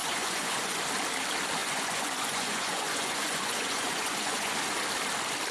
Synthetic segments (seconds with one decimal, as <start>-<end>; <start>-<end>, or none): 0.0-0.8; 1.6-4.6